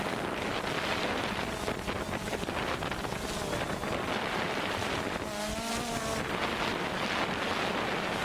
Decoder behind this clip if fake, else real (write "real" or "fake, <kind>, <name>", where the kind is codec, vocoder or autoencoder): real